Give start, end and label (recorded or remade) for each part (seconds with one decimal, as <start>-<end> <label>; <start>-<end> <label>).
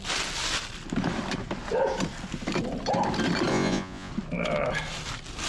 0.0-3.5 recorded; 3.5-4.1 remade; 4.1-5.5 recorded